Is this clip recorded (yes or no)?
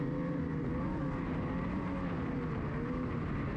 yes